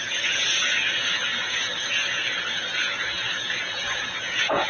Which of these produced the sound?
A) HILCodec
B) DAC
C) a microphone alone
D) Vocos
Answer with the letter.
D